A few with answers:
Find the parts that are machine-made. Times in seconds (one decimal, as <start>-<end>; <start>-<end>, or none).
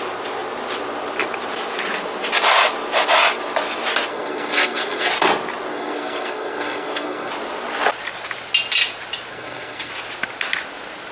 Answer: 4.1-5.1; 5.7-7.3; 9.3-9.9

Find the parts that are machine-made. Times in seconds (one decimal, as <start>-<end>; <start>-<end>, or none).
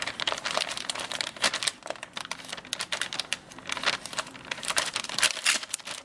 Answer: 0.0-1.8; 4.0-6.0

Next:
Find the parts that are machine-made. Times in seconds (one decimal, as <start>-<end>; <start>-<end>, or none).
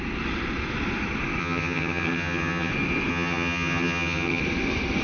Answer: 1.4-2.7; 3.1-4.4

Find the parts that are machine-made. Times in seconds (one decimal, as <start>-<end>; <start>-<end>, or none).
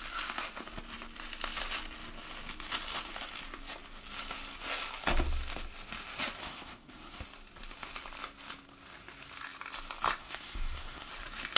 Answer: 6.4-7.2; 10.2-11.1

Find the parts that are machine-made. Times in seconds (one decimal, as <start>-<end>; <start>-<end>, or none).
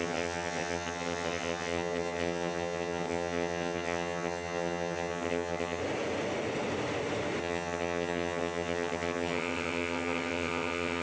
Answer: 0.0-5.8; 7.4-11.0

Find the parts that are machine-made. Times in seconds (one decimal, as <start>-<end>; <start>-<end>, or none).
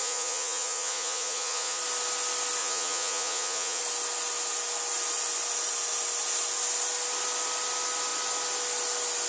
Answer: 0.0-1.8; 2.6-3.8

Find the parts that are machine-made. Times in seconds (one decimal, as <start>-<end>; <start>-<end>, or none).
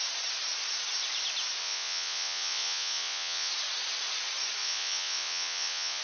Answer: 1.6-3.5; 4.6-6.0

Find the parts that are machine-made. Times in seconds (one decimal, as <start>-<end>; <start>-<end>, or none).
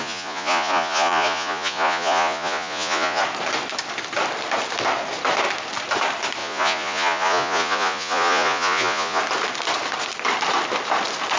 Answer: 0.0-3.2; 6.4-9.2